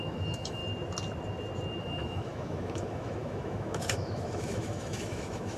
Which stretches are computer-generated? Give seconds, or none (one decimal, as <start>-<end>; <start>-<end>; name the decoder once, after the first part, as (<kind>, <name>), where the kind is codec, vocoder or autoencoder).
0.0-0.6 (autoencoder, DAC-VAE); 1.8-5.6